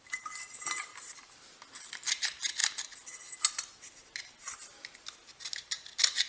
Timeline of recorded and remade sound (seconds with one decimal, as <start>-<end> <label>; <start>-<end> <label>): 0.0-6.3 recorded